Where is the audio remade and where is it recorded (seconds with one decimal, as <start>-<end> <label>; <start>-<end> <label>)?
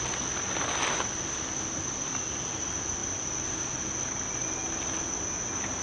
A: 0.0-5.8 recorded